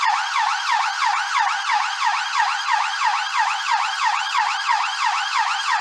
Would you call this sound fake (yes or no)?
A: yes